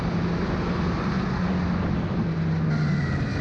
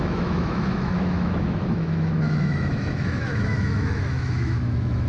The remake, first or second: second